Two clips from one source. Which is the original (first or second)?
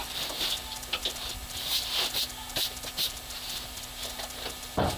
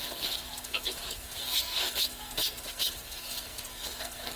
first